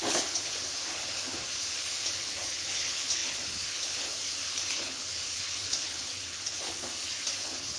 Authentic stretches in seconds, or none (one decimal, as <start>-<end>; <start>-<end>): none